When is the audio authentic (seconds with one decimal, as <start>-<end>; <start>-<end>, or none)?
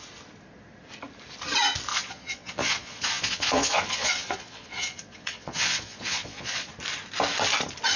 0.0-1.9; 6.7-8.0